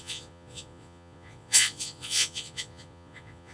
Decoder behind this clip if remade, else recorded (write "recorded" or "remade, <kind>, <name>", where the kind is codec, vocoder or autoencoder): remade, vocoder, Vocos